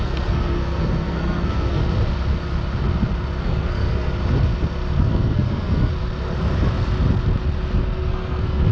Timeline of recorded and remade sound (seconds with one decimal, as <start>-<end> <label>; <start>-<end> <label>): 0.0-1.8 remade; 1.8-3.4 recorded; 3.4-4.2 remade; 4.2-5.0 recorded; 5.0-5.9 remade; 5.9-7.8 recorded; 7.8-8.7 remade